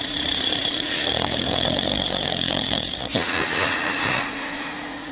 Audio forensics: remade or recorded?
remade